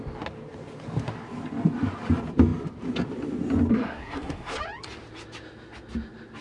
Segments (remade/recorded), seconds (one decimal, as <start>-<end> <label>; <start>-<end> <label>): 0.0-3.7 recorded; 3.7-4.6 remade; 4.6-6.4 recorded